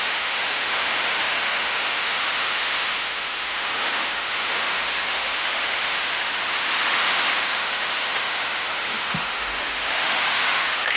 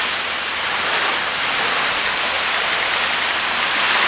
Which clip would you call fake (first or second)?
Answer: first